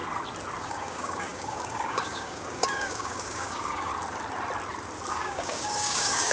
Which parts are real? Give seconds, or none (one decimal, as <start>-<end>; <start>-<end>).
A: 0.0-0.6; 3.9-5.1